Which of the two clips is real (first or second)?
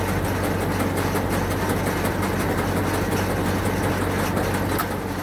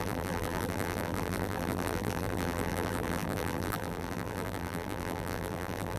first